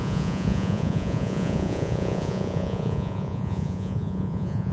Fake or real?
fake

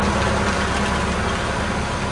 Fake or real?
real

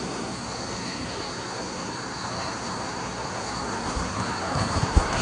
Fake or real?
fake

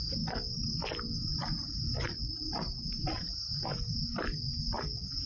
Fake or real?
real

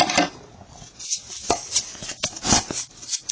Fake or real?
real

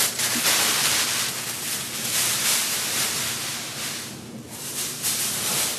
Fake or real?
real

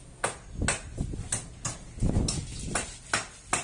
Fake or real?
real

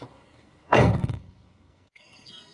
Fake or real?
fake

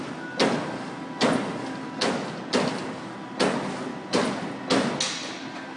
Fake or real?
real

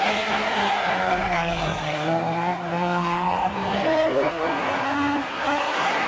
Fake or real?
fake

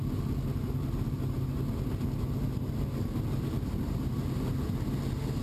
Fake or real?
real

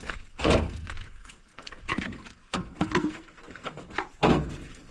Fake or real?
fake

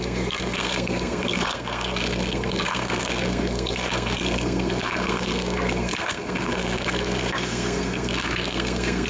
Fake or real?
fake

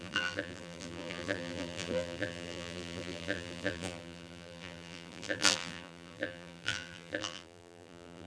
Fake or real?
fake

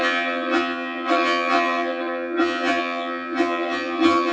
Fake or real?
fake